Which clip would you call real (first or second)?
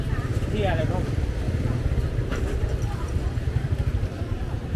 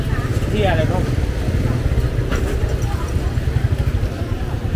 second